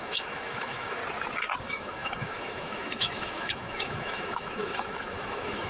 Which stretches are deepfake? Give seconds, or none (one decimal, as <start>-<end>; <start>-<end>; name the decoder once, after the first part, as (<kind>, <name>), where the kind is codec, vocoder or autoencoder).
0.0-1.0 (autoencoder, DAC-VAE); 1.6-5.7